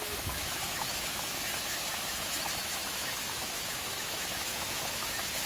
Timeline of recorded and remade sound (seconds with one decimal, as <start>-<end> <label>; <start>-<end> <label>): 0.0-5.5 remade